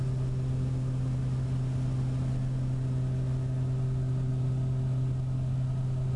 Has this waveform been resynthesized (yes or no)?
no